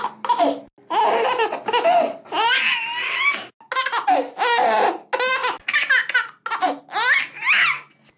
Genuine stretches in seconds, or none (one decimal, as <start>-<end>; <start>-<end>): 0.0-8.2